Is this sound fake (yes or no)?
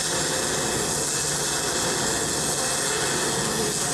no